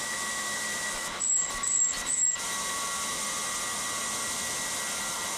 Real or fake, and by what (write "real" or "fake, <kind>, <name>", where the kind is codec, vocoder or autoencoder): real